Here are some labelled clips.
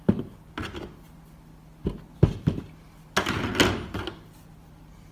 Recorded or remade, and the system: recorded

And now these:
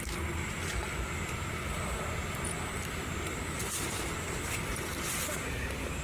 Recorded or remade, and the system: recorded